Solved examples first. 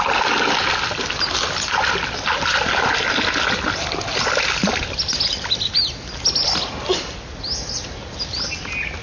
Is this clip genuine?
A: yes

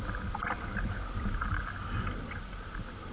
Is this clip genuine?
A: yes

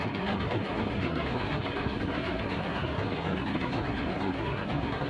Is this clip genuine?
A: no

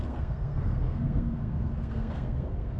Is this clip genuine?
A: no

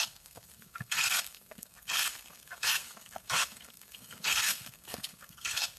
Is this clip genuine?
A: no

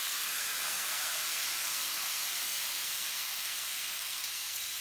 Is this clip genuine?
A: no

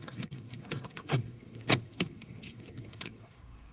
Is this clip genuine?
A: no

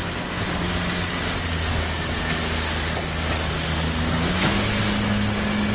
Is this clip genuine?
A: yes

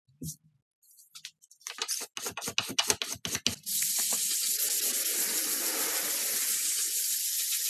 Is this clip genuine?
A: yes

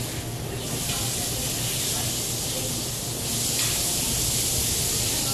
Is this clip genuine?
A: yes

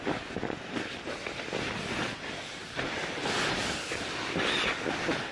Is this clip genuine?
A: yes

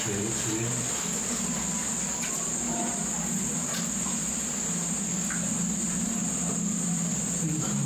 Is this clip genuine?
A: yes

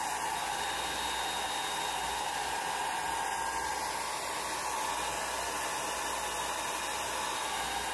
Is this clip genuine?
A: yes